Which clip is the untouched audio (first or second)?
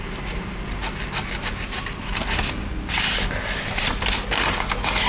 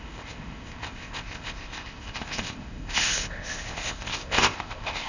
first